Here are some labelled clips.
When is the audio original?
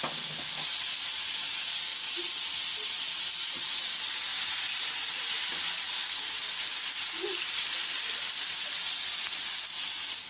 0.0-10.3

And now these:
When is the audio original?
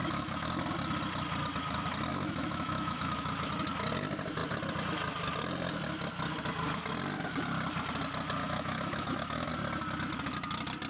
0.5-2.1; 3.5-8.4; 9.5-10.9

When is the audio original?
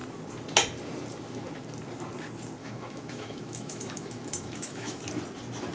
0.0-2.6; 5.0-5.7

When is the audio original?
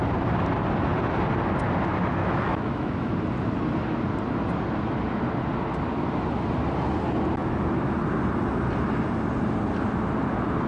0.0-2.2; 3.1-10.7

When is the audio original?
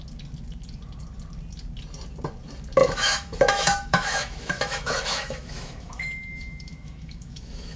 0.0-2.8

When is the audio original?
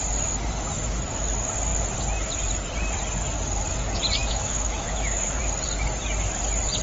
0.0-4.2; 5.4-6.8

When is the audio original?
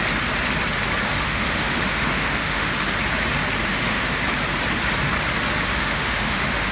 0.0-1.1; 2.7-3.7; 4.2-5.7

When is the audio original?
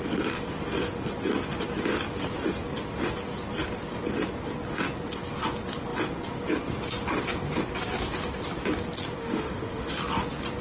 0.0-9.2; 10.0-10.6